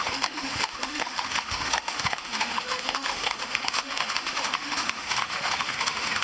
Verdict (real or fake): fake